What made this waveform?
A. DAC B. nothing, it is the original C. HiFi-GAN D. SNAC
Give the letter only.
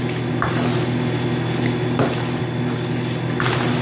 B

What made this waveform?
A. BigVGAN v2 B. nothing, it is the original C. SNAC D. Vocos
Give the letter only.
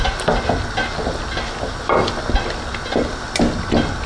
B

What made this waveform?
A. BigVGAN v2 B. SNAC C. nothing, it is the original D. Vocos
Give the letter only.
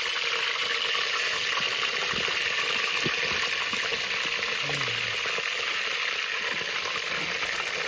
C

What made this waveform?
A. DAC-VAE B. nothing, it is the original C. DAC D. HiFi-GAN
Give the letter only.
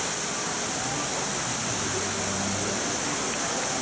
B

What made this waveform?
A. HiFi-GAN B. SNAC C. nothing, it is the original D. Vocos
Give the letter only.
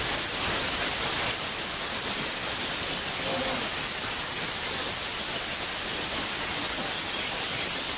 C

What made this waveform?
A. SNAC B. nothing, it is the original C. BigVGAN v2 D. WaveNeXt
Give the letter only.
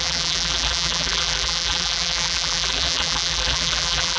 C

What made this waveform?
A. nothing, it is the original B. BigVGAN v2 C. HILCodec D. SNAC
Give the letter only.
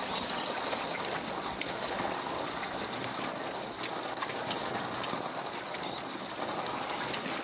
A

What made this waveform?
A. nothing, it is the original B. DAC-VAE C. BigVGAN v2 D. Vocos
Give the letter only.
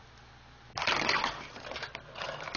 A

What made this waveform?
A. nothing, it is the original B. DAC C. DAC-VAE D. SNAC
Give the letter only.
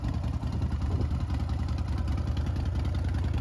A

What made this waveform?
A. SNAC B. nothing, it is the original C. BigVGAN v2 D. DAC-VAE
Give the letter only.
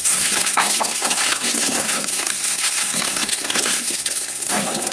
A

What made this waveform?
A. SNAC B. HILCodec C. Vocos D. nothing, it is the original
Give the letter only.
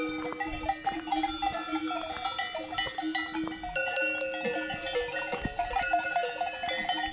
D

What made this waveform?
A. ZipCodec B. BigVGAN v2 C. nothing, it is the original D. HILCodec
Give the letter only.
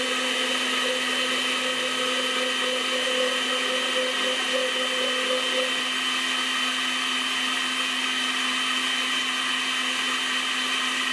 C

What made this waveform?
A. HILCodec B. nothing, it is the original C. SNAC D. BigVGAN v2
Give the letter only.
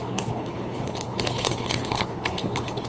A